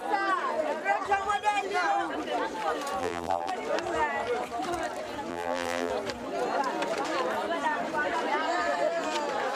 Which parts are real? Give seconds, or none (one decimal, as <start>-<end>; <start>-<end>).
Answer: 0.0-3.0; 3.5-5.3; 5.9-9.5